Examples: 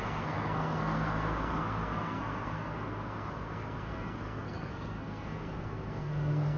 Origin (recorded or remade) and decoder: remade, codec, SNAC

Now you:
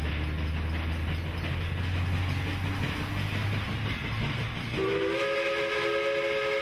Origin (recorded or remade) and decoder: recorded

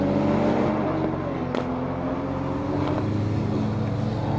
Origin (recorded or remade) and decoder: recorded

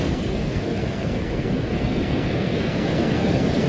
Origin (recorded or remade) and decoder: remade, codec, SNAC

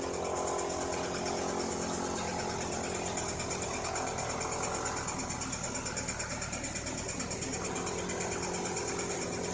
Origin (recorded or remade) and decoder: recorded